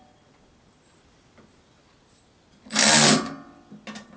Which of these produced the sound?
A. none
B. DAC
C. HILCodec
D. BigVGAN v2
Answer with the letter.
A